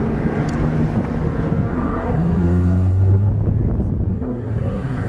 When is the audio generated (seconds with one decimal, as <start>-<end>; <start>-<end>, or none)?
1.7-3.3; 4.1-5.1